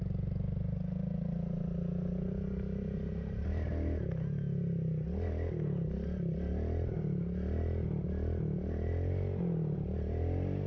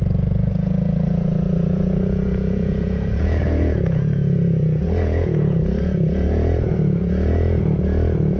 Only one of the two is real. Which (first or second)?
first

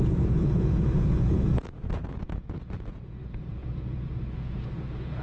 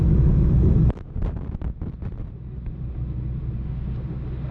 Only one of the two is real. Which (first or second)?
second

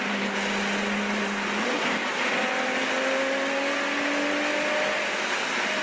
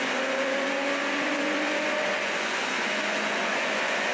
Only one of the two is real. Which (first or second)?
first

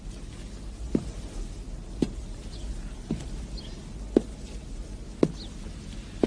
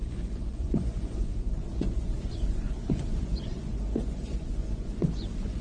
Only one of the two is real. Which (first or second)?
first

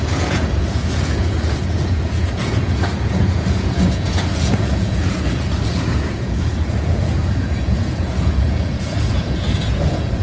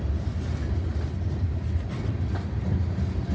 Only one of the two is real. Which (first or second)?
second